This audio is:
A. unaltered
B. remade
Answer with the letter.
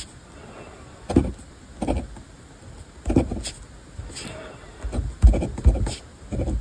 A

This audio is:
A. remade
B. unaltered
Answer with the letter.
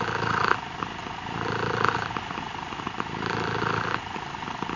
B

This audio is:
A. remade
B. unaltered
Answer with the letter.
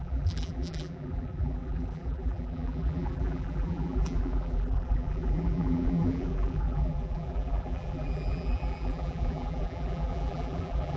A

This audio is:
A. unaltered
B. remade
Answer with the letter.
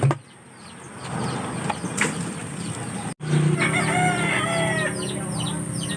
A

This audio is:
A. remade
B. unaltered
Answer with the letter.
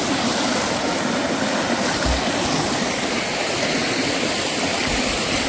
B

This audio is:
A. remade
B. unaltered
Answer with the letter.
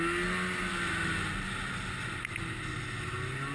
B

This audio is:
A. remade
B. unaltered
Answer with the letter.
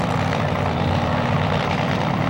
A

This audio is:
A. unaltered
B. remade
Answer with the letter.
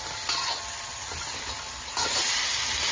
A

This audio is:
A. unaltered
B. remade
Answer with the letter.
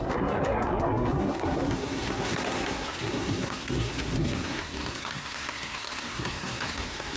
B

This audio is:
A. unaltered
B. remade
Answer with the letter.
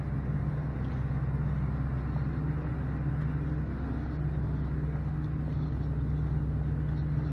A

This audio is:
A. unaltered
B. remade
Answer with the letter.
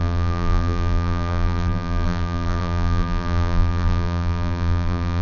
B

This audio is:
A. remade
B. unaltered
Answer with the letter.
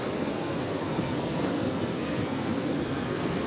A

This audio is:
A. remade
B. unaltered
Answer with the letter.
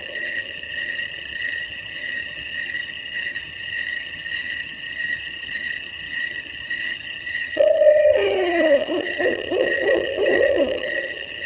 A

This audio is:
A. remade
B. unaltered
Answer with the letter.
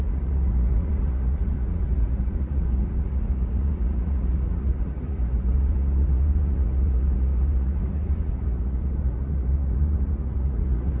A